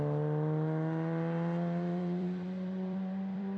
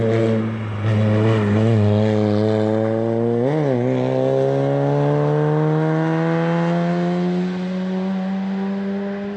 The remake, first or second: first